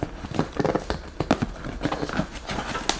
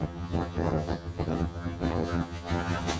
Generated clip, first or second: second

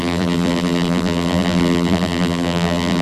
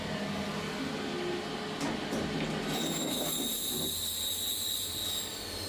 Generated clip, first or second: first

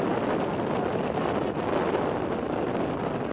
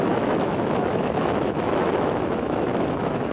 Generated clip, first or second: second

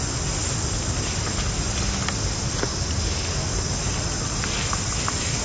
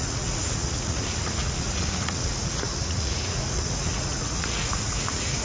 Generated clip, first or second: second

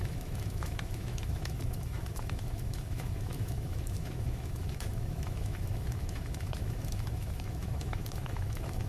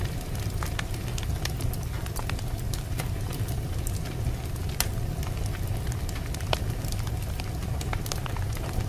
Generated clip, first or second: first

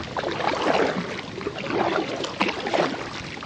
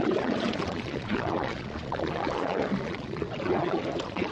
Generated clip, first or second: second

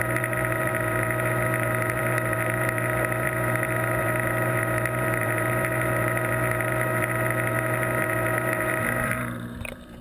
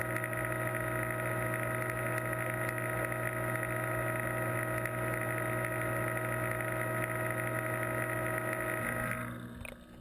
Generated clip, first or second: first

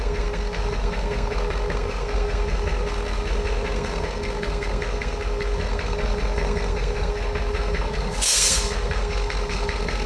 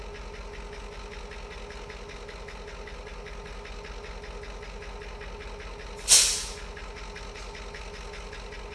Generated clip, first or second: first